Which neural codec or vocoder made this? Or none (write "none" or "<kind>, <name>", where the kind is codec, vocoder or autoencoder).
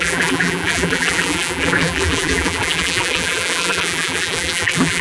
vocoder, BigVGAN v2